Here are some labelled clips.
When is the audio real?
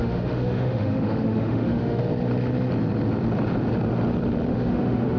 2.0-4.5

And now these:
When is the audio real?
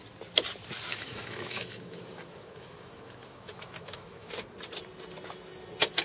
0.0-0.9; 4.3-6.0